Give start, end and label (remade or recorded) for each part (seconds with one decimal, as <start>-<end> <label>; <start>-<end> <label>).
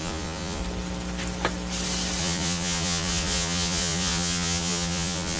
0.0-0.6 remade; 0.6-2.2 recorded; 2.2-5.4 remade